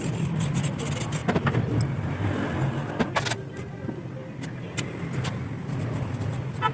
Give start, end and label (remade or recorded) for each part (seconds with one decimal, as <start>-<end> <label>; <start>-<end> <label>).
0.0-6.7 recorded